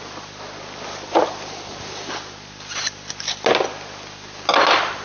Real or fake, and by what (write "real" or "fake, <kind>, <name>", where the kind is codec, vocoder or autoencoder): real